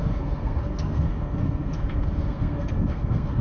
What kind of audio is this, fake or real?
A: fake